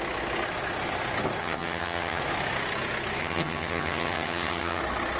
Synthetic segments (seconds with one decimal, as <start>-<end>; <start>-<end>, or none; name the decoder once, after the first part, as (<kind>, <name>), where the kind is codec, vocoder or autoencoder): 1.4-2.2 (vocoder, HiFi-GAN); 3.2-4.8